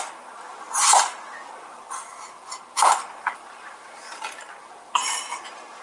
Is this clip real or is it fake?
real